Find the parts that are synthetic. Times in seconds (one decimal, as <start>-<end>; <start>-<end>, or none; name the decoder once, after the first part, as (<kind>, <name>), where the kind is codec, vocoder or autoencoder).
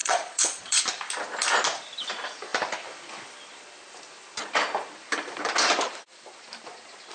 0.0-0.8 (vocoder, Vocos)